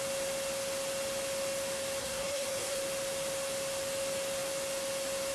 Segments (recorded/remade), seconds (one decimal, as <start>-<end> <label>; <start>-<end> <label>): 0.0-2.0 recorded; 2.0-2.8 remade; 2.8-5.3 recorded

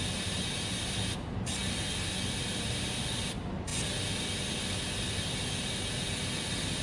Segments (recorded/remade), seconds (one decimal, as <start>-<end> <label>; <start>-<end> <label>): 0.0-6.8 recorded

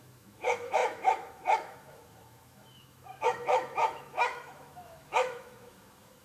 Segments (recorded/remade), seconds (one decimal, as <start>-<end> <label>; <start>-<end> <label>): 0.0-6.2 remade

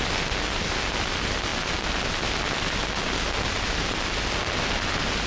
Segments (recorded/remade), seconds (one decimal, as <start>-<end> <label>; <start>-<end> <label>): 0.0-5.3 recorded

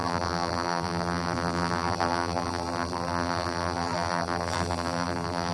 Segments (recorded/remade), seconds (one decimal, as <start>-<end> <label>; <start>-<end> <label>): 0.0-5.5 remade

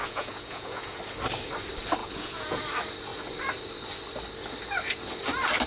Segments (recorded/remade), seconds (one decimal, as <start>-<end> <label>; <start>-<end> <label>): 0.0-1.0 remade; 1.0-2.0 recorded; 2.0-2.6 remade; 2.6-5.7 recorded

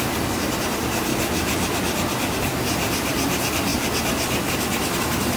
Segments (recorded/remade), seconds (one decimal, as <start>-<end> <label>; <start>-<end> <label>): 0.0-1.1 remade; 1.1-2.6 recorded; 2.6-3.7 remade; 3.7-5.4 recorded